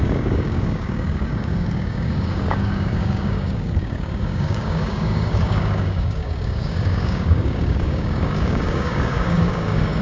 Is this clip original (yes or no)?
no